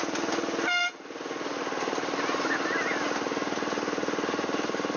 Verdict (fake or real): real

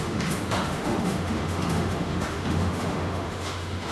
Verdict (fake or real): fake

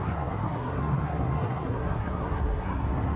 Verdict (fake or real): fake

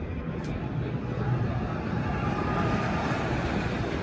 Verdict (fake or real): real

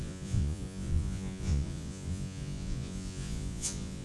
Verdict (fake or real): fake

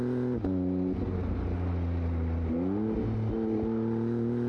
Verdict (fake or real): real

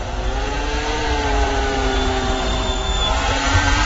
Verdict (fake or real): fake